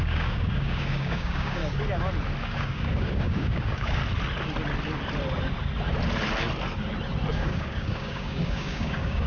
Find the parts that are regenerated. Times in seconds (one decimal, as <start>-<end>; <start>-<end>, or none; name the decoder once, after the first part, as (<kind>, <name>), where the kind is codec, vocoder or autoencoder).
0.0-1.6 (codec, DAC); 2.4-4.0; 7.3-9.3